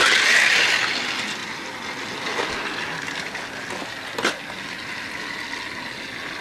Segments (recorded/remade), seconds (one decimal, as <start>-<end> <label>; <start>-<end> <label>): 0.0-6.4 recorded